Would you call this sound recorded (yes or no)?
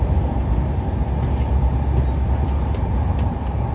yes